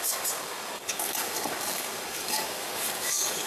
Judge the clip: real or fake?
fake